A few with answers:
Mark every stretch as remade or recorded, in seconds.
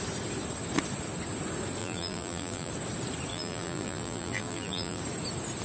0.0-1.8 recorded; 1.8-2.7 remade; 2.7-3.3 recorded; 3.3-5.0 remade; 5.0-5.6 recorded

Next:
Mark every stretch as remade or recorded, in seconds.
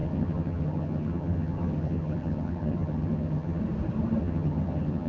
0.0-3.6 remade; 3.6-4.2 recorded; 4.2-5.1 remade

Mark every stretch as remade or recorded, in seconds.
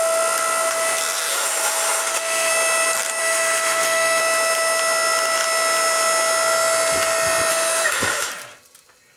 0.0-1.3 recorded; 1.3-2.5 remade; 2.5-3.2 recorded; 3.2-4.2 remade; 4.2-7.5 recorded; 7.5-8.3 remade; 8.3-9.2 recorded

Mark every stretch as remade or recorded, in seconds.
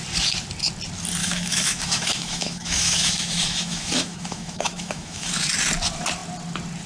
0.0-1.2 recorded; 1.2-5.3 remade; 5.3-6.9 recorded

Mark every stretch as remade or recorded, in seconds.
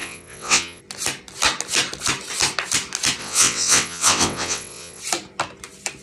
0.0-0.8 remade; 0.8-3.2 recorded; 3.2-5.0 remade; 5.0-6.0 recorded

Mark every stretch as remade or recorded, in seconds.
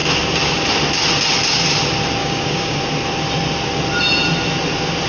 0.0-2.2 recorded; 2.2-2.8 remade; 2.8-5.1 recorded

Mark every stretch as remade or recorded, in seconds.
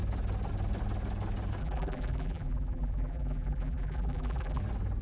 0.0-1.6 recorded; 1.6-4.6 remade; 4.6-5.0 recorded